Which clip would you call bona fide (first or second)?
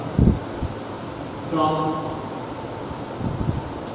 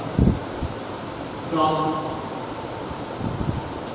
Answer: first